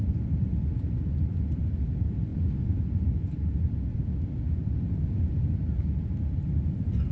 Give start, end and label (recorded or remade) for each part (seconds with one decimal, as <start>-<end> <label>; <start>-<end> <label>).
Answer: 0.0-7.1 recorded